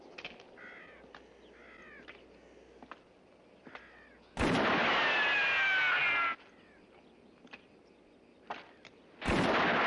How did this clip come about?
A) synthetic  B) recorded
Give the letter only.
B